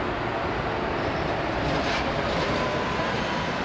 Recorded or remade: recorded